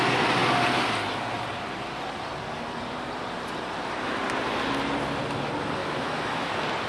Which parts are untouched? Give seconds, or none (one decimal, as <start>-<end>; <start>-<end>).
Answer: 0.0-5.8; 6.5-6.9